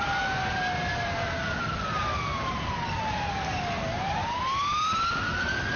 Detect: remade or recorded recorded